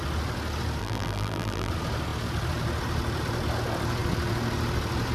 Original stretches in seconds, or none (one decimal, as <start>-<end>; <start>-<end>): 0.0-0.8; 1.7-5.1